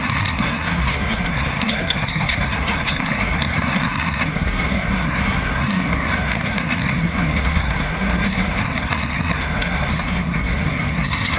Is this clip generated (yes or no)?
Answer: yes